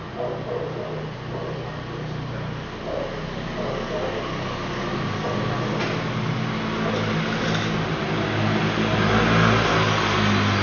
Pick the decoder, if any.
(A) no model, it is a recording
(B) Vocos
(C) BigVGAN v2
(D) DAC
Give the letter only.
A